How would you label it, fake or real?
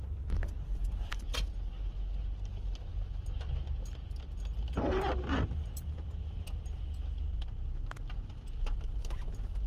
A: real